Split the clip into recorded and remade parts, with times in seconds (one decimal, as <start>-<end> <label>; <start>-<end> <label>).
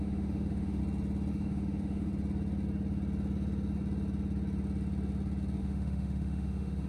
0.0-0.8 remade; 0.8-1.3 recorded; 1.3-2.1 remade; 2.1-5.6 recorded; 5.6-6.9 remade